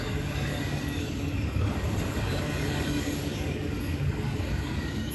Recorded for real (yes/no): no